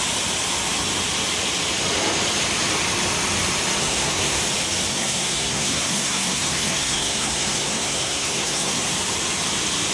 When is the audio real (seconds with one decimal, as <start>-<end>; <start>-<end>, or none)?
0.0-3.8; 4.4-4.9; 8.8-9.9